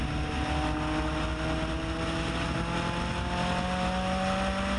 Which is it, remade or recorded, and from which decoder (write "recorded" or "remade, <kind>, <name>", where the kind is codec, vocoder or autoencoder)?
recorded